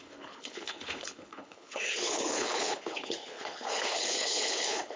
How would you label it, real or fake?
fake